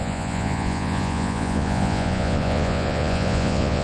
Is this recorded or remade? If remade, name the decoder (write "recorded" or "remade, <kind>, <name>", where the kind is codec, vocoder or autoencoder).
remade, vocoder, Vocos